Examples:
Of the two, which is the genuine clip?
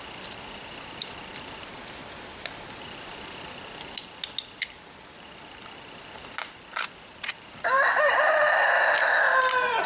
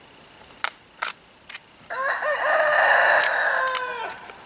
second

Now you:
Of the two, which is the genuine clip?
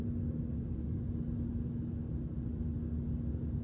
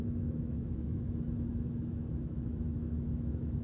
first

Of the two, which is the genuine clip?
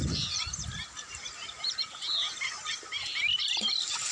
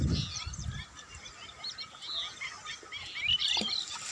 second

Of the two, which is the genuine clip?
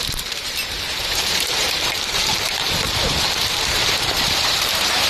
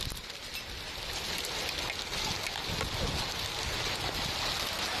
second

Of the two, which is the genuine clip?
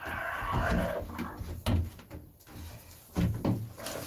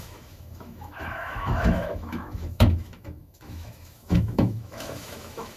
first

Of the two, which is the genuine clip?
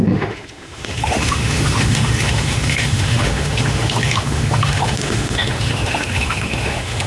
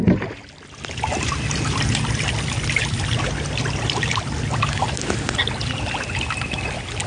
second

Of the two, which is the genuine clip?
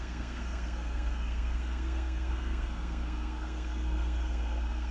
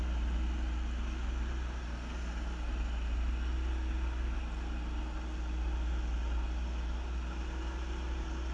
second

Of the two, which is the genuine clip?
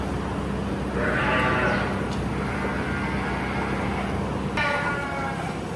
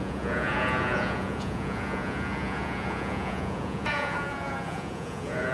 first